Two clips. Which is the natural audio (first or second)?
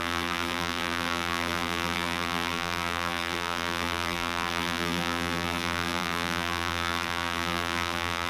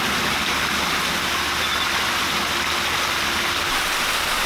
second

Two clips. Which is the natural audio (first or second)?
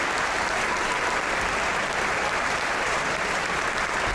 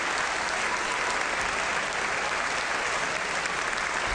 second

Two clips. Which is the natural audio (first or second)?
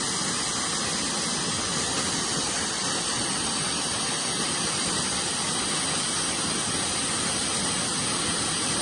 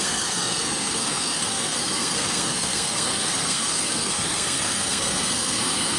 first